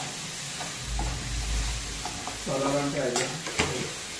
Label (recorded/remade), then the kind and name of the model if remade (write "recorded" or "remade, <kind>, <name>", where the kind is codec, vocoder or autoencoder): recorded